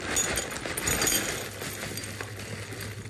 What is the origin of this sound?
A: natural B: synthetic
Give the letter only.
A